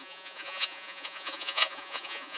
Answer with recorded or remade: remade